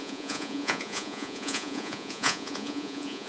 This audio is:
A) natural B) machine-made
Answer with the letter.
B